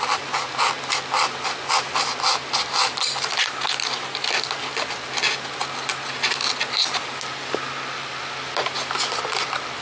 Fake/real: real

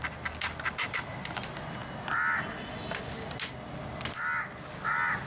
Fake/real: real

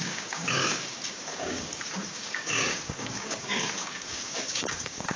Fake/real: fake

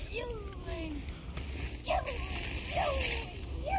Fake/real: real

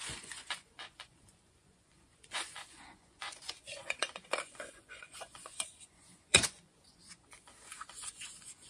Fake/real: fake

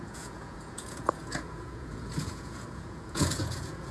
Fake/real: fake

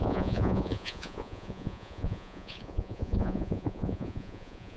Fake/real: fake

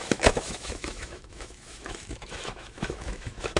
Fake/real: fake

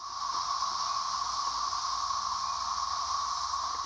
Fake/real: real